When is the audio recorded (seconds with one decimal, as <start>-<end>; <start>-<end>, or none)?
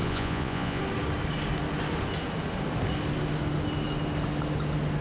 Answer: 0.8-5.0